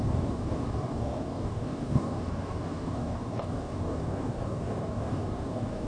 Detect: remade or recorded remade